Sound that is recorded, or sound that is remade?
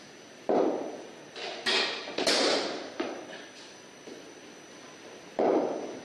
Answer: recorded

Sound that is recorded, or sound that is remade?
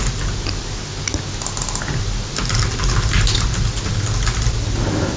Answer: recorded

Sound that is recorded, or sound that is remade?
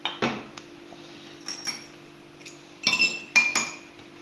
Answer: recorded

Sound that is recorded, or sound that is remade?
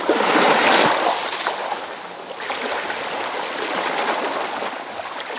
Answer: recorded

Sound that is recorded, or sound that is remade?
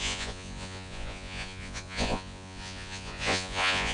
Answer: remade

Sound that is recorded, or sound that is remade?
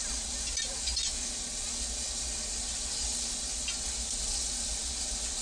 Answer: recorded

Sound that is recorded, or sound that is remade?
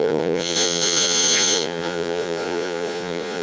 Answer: remade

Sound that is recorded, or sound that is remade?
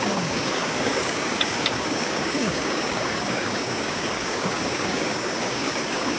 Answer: remade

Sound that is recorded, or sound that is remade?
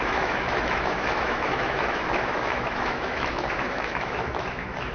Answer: remade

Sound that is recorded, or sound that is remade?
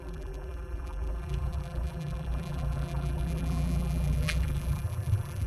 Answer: remade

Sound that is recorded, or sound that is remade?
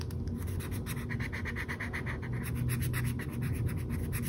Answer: recorded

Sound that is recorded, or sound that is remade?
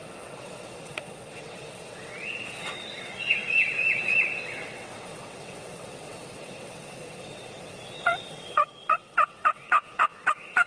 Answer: remade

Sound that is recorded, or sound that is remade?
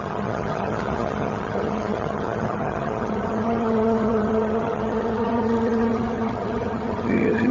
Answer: remade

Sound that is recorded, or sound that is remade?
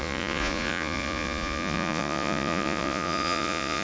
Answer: remade